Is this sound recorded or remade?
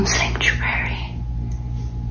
recorded